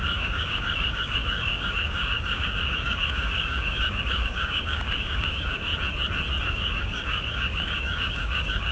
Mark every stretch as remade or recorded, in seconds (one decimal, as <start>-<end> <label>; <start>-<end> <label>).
0.0-5.7 remade; 5.7-6.4 recorded; 6.4-8.7 remade